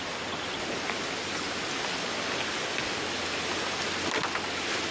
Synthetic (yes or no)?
no